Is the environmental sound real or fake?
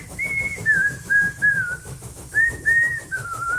fake